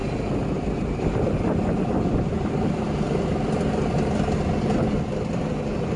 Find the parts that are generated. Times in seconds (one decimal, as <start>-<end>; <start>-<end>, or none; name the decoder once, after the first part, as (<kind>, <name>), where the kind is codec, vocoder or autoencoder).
none